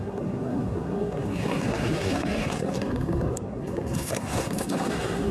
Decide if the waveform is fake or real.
fake